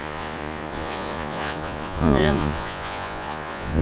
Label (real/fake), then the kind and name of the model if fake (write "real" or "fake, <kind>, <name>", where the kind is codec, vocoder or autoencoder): fake, vocoder, Vocos